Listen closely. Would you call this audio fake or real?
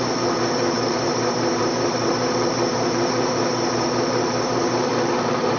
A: fake